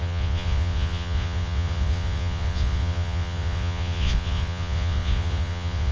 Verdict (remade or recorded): remade